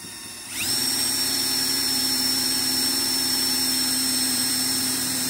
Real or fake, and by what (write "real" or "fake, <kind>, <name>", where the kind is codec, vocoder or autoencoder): fake, vocoder, BigVGAN v2